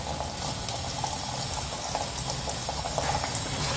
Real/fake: real